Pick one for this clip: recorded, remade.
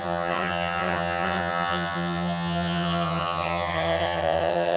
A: remade